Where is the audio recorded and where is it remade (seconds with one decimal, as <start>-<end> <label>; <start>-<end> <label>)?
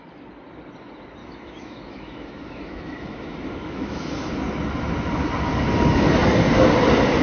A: 0.0-1.2 recorded; 1.2-4.3 remade; 4.3-7.2 recorded